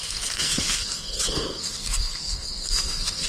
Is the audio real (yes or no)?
no